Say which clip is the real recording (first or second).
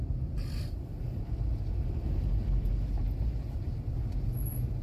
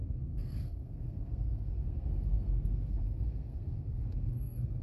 first